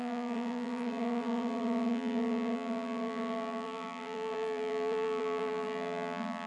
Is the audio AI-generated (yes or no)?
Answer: yes